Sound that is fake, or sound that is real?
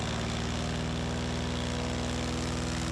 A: real